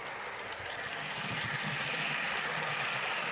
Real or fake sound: real